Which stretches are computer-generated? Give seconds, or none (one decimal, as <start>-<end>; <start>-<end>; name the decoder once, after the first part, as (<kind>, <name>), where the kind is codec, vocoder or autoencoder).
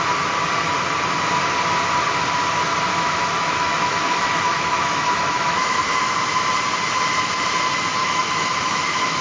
2.9-6.2 (autoencoder, DAC-VAE); 8.0-9.2